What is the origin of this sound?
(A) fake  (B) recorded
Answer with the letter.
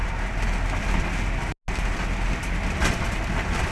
B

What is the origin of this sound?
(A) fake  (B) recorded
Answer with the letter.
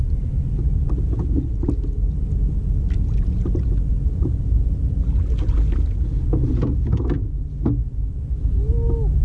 B